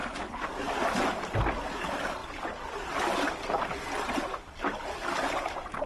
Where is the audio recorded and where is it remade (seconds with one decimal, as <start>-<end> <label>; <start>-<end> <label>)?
0.0-5.9 recorded